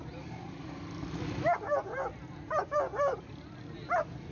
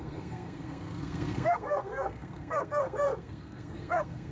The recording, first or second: first